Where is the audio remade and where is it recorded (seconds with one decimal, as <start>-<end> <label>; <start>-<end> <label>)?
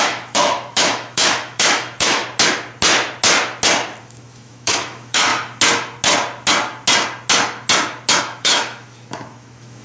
0.0-2.2 remade; 2.2-4.0 recorded; 4.0-5.3 remade; 5.3-8.2 recorded; 8.2-9.8 remade